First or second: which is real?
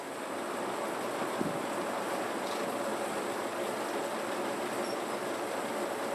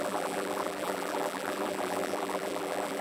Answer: first